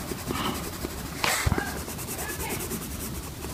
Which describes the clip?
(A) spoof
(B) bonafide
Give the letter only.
A